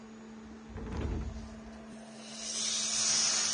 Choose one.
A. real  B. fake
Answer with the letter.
A